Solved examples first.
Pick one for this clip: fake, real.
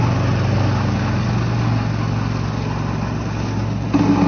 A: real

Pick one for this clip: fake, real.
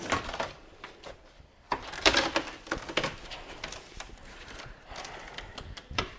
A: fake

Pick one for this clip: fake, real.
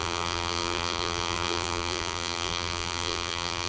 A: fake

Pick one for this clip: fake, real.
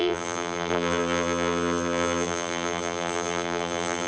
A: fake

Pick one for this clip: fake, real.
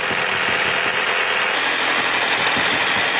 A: real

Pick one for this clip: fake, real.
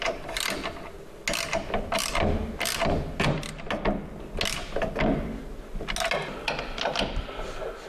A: real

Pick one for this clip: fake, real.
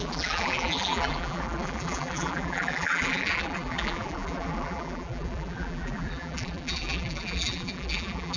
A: fake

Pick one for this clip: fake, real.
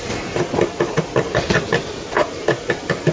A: real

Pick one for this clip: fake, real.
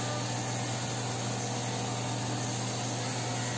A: real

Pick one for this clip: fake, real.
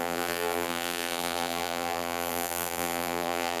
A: fake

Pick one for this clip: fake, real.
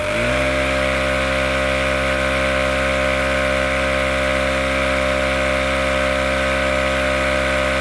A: real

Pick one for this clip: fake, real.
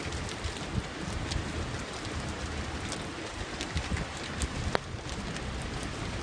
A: real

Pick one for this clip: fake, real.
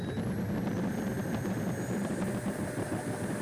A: real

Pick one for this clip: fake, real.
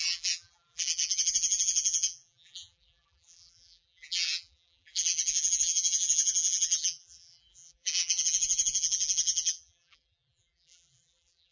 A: fake